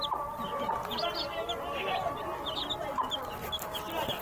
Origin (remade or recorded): recorded